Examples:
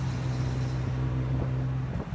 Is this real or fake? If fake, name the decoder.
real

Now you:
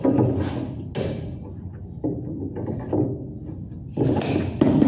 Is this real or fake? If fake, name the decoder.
real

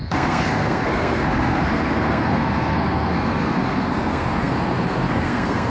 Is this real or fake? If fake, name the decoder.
fake, codec, SNAC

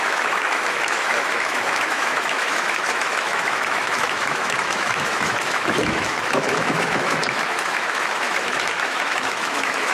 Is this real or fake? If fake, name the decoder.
fake, autoencoder, DAC-VAE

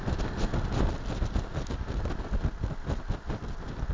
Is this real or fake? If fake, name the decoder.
real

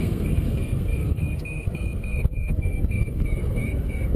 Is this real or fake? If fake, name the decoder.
fake, codec, SNAC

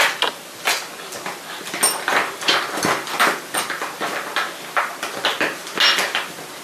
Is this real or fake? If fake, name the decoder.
real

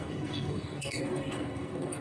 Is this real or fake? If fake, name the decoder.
fake, codec, SNAC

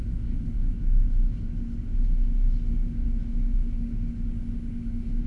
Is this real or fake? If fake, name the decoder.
fake, autoencoder, DAC-VAE